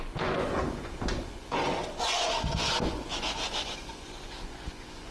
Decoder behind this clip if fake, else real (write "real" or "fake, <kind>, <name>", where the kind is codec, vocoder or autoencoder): fake, vocoder, Vocos